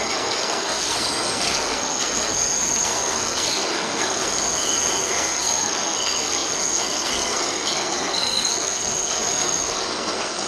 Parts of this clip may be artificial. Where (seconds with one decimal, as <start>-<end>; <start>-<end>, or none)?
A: 0.0-10.5